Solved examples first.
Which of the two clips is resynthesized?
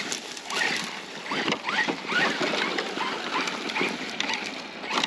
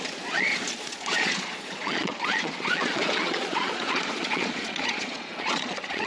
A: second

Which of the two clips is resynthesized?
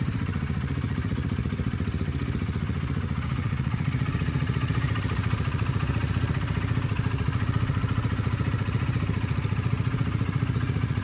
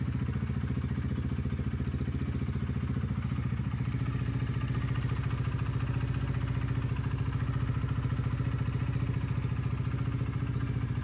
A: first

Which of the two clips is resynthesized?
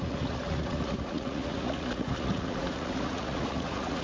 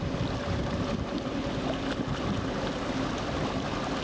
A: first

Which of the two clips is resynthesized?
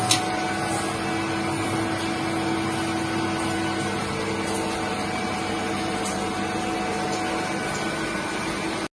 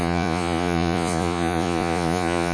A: second